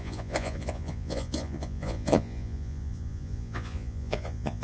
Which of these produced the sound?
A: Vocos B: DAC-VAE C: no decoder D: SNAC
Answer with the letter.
A